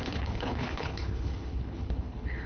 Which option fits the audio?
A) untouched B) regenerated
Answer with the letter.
B